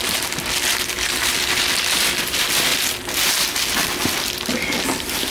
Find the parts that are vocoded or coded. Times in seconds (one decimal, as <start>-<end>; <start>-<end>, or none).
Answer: 0.0-2.7; 3.4-5.3